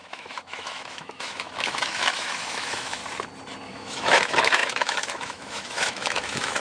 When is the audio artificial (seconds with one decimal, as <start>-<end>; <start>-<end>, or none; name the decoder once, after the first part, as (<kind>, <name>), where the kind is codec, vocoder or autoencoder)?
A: 0.0-3.0 (autoencoder, DAC-VAE); 3.7-6.6